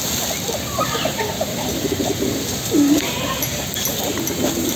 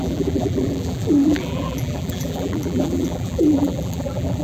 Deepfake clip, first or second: second